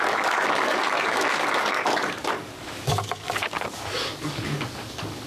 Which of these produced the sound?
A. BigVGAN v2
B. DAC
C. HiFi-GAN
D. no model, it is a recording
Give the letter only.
B